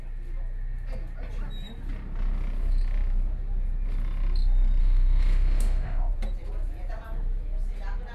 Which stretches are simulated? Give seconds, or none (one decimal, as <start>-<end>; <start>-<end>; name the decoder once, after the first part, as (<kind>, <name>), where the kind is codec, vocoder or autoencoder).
4.8-6.1 (autoencoder, DAC-VAE)

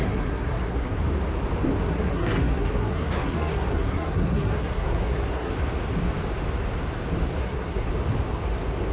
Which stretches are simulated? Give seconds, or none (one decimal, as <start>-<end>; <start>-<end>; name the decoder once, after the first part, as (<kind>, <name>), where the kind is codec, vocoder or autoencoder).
0.0-1.0 (codec, SNAC); 1.9-5.5; 7.4-7.9

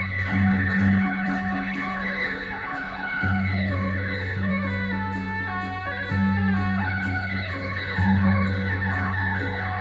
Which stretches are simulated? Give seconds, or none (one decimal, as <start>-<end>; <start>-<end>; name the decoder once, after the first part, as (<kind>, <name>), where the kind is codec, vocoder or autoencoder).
0.0-4.5 (codec, HILCodec); 6.8-9.8

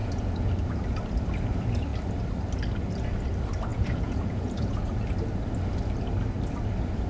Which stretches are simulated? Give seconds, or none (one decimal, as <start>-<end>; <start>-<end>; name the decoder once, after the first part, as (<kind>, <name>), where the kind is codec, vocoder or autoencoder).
0.0-0.5 (vocoder, Vocos); 3.7-4.9

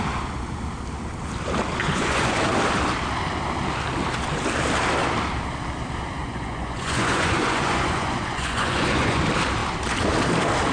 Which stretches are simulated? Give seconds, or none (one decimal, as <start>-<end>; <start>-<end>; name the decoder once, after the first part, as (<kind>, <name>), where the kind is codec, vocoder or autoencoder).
1.8-2.4 (vocoder, Vocos); 6.2-9.2

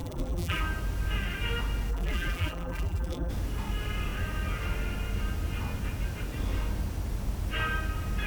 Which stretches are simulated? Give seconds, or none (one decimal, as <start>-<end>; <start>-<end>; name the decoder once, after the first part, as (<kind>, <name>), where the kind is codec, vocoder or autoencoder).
0.0-0.6 (vocoder, BigVGAN v2); 1.9-3.3

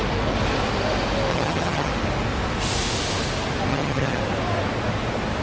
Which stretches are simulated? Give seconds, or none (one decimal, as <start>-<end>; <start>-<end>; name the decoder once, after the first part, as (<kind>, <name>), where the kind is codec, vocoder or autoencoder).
1.3-1.9 (vocoder, HiFi-GAN); 3.7-4.2

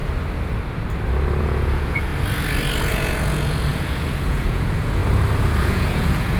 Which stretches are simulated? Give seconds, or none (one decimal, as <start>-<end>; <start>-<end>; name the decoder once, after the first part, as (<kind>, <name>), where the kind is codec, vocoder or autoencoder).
1.4-2.1 (vocoder, Vocos); 2.9-5.0; 5.6-6.4